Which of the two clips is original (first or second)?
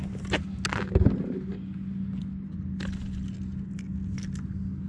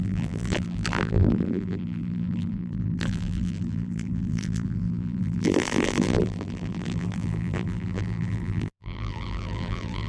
first